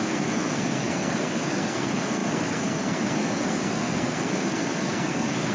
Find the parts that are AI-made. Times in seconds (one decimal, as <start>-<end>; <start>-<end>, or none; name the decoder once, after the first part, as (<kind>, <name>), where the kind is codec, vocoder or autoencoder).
0.0-5.5 (codec, SNAC)